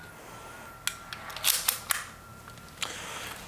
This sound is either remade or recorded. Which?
recorded